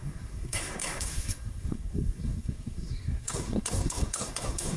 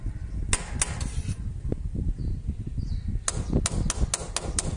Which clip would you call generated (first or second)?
first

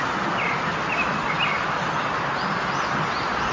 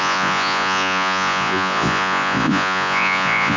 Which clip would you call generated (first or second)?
second